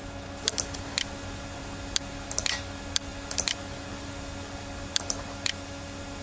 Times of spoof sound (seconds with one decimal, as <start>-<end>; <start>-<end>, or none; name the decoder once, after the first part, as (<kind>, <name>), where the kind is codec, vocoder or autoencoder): none